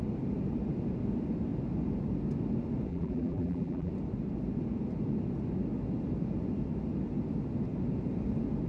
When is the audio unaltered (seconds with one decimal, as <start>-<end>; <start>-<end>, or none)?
0.0-2.9; 3.9-8.7